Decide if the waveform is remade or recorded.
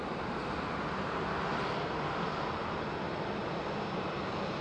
recorded